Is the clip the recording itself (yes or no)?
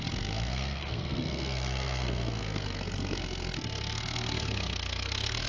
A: no